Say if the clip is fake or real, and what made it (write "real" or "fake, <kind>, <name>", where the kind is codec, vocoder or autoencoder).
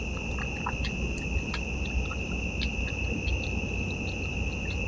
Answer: real